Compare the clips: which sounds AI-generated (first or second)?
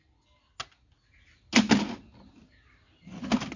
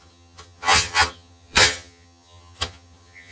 second